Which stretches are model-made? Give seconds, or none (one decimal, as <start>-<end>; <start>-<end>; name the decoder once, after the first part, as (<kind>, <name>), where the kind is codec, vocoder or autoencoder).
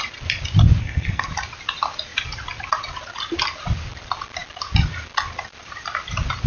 0.8-1.3 (codec, SNAC)